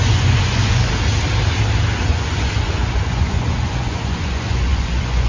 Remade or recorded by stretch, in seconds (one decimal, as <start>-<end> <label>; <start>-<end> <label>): 0.0-0.9 remade; 0.9-2.1 recorded; 2.1-5.3 remade